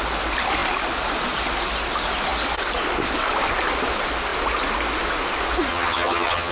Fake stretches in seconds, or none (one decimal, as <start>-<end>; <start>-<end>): 5.7-6.5